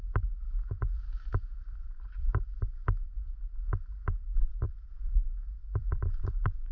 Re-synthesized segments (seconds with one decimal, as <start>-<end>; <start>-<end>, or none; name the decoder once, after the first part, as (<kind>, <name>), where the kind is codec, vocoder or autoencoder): 0.0-4.5 (vocoder, BigVGAN v2); 5.1-6.7